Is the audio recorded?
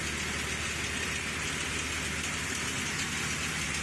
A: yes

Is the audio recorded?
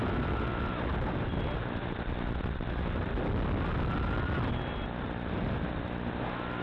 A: yes